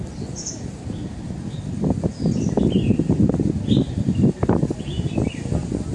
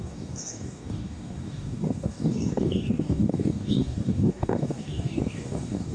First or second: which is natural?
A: first